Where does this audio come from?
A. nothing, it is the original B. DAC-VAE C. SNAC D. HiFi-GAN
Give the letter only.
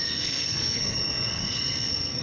C